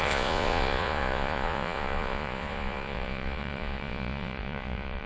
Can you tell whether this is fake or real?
fake